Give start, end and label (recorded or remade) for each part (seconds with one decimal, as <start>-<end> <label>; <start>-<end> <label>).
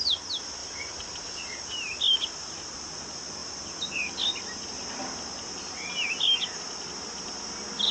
0.0-0.6 recorded; 0.6-1.4 remade; 1.4-7.9 recorded